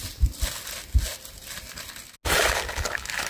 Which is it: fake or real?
real